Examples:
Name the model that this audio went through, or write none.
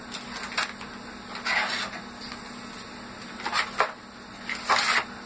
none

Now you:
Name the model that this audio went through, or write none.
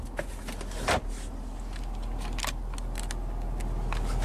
none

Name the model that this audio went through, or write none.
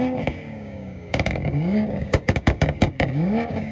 codec, DAC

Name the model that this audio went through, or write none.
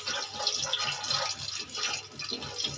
none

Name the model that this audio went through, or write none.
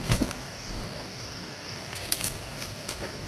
codec, DAC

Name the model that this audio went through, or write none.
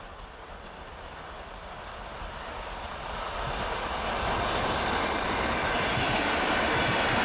none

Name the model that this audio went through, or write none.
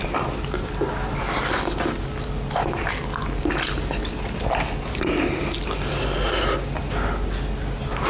none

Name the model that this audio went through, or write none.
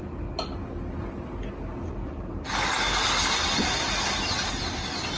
none